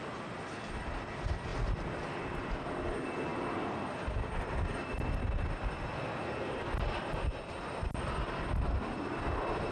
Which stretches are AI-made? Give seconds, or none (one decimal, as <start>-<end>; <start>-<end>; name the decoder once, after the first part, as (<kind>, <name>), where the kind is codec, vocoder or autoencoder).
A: none